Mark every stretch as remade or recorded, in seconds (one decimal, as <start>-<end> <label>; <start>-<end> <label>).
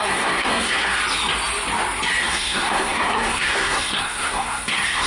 0.0-1.0 remade; 1.0-2.2 recorded; 2.2-5.1 remade